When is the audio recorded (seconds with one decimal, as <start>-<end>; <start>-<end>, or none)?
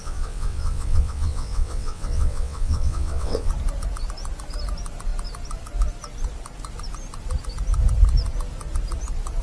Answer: 3.5-9.4